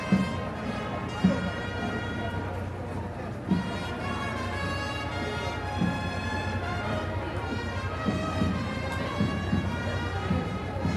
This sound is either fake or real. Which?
real